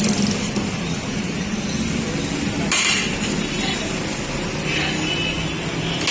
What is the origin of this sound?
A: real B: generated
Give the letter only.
A